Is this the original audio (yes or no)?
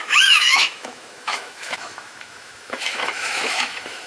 no